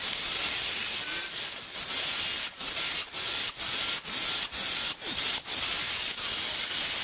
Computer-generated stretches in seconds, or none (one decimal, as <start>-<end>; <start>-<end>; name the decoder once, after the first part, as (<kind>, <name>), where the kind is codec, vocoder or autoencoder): none